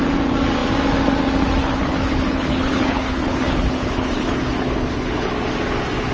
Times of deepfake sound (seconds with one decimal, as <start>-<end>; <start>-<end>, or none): 1.6-5.3